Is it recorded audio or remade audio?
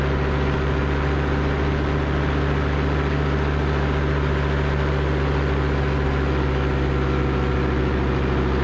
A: recorded